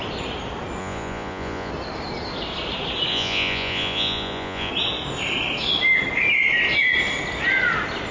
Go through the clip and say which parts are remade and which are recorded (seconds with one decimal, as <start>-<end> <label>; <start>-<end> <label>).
0.0-0.8 recorded; 0.8-1.7 remade; 1.7-3.1 recorded; 3.1-4.7 remade; 4.7-8.1 recorded